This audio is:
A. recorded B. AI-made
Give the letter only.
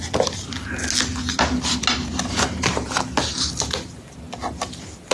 A